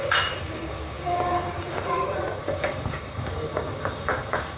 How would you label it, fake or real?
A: fake